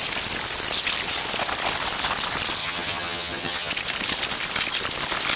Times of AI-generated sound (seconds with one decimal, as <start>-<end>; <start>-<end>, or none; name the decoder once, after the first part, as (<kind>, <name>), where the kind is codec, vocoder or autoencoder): 2.6-3.7 (vocoder, HiFi-GAN)